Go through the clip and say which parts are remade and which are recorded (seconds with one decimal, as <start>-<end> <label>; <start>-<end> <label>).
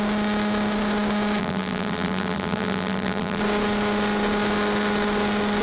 0.0-1.4 recorded; 1.4-3.4 remade; 3.4-5.6 recorded